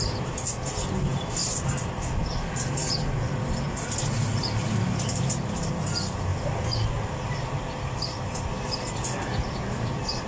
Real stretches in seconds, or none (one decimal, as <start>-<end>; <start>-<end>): 0.0-10.3